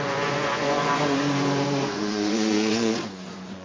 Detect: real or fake fake